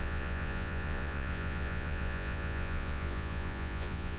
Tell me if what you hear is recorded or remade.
remade